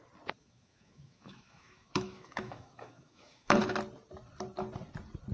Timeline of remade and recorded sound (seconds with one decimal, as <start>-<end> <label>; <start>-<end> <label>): 0.0-0.4 recorded; 0.4-3.6 remade; 3.6-5.3 recorded